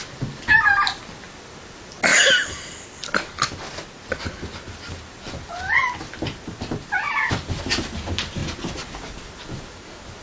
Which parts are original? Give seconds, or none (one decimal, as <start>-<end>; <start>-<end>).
0.0-10.2